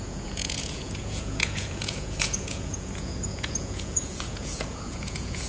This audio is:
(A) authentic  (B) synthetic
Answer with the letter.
B